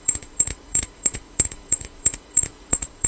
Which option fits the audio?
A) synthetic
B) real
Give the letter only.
A